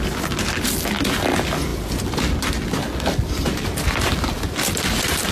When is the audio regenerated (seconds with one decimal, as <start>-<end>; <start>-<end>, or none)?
none

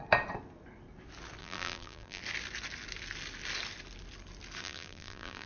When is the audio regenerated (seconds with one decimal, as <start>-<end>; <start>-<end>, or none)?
1.4-2.2; 4.6-5.5

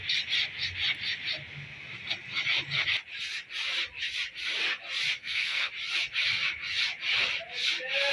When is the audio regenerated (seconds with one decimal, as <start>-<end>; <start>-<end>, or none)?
5.2-5.7

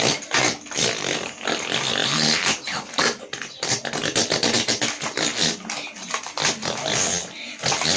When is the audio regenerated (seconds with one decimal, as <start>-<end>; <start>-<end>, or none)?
2.0-2.9

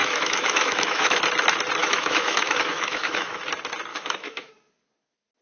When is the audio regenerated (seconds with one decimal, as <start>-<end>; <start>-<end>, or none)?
0.0-1.2; 1.8-3.4; 3.9-4.5

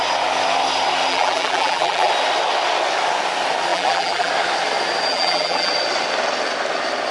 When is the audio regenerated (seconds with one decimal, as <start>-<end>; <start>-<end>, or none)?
1.1-2.1; 3.7-4.3; 5.1-5.7

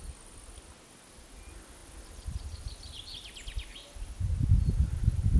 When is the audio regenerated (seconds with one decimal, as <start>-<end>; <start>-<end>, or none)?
none